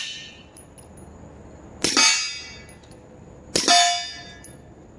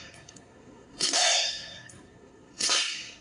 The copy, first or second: second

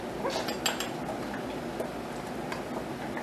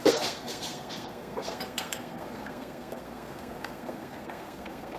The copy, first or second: second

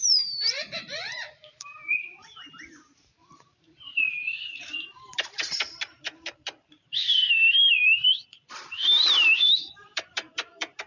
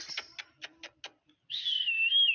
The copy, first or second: first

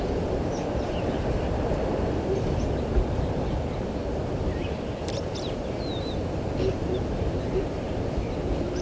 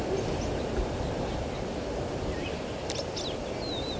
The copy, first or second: first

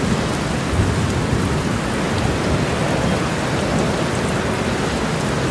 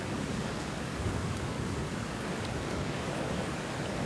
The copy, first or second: second